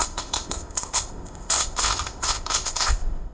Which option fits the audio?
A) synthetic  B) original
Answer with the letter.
A